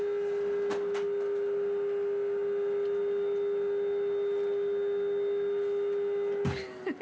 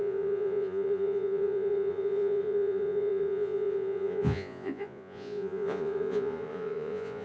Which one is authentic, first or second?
first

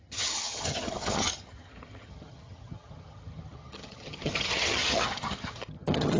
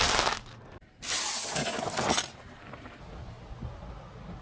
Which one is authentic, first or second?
second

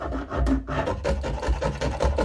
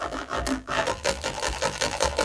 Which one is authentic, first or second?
first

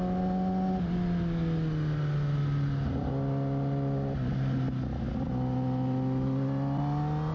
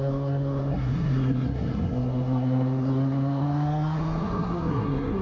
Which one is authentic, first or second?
first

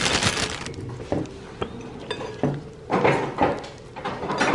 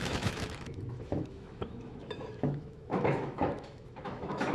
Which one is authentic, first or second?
first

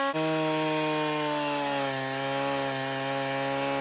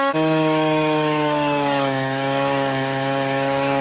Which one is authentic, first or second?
first